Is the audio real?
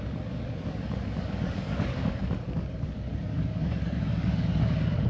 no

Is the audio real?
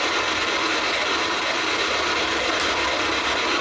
yes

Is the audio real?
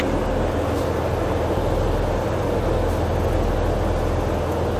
yes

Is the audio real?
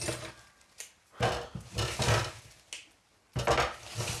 yes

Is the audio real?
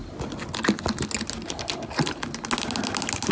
yes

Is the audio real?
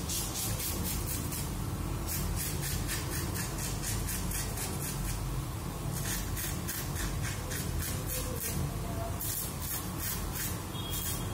yes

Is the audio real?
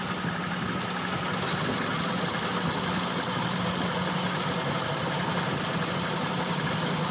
yes